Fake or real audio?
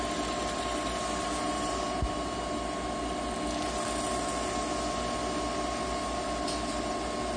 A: real